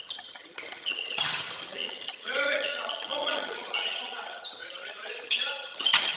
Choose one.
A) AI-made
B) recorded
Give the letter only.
A